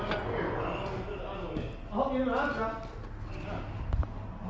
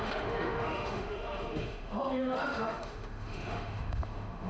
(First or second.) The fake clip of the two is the second